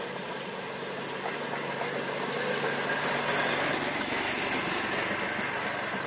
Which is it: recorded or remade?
recorded